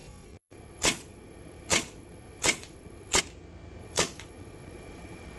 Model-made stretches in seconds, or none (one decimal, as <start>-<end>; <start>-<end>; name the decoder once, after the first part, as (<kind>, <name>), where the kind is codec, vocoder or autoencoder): 0.0-3.2 (vocoder, Vocos); 3.8-5.4